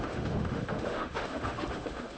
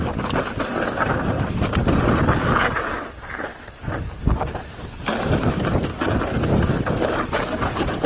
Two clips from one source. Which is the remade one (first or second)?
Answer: first